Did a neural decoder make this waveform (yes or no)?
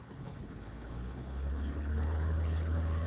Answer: yes